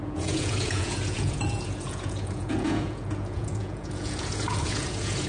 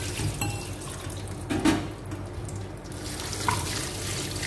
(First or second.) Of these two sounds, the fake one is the first